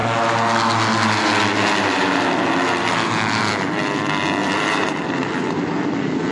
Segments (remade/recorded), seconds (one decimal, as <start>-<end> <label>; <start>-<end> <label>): 0.0-4.4 recorded; 4.4-6.3 remade